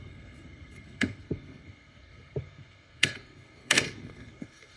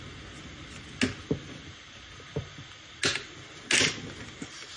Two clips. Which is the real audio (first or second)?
second